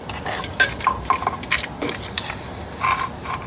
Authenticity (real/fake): real